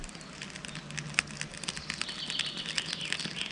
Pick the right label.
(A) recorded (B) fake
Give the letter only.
A